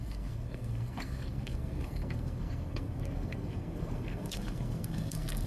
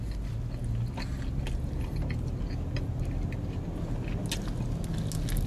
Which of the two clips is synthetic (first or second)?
first